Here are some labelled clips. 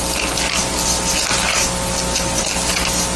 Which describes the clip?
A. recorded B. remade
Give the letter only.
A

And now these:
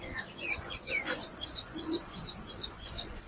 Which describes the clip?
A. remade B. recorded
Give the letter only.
A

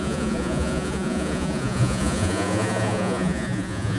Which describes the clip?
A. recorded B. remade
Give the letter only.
B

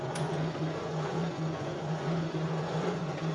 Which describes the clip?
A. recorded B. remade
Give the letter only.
B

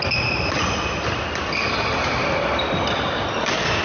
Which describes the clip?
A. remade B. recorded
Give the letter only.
B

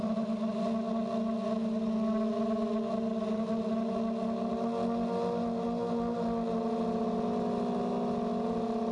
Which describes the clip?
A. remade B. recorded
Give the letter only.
B